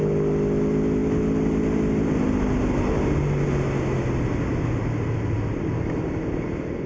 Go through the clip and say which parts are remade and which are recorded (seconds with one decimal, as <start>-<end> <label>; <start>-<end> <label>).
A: 0.0-6.9 recorded